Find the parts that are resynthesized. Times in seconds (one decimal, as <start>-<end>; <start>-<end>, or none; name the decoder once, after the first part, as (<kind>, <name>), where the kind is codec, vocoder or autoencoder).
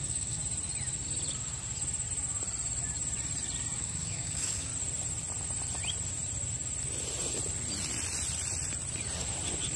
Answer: 0.0-0.4 (codec, DAC); 3.8-4.7